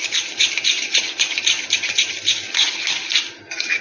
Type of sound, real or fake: real